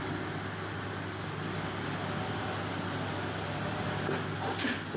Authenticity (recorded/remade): recorded